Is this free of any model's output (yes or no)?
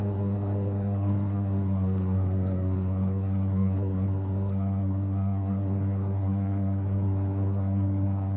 no